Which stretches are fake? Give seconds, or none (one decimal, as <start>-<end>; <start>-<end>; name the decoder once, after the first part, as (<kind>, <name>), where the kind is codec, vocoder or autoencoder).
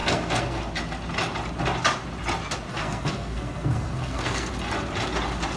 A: 0.0-0.6 (codec, SNAC); 2.7-4.5